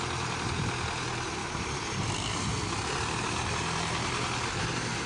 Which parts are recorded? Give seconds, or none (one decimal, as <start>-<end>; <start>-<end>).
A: 0.0-5.1